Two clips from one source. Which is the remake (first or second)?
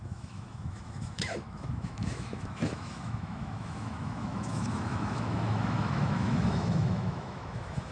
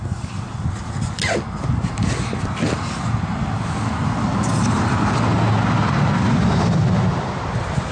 first